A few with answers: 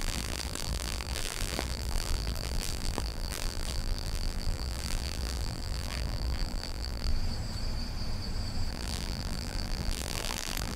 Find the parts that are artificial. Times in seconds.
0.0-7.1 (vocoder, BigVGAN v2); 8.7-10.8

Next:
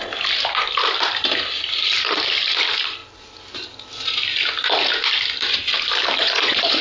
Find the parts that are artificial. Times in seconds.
6.2-6.8 (vocoder, Vocos)